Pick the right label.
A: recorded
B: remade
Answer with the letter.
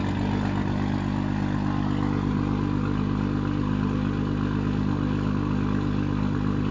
A